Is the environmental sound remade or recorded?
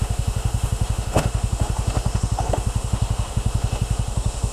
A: remade